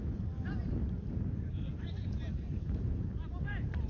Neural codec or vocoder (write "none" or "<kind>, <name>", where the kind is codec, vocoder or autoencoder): vocoder, BigVGAN v2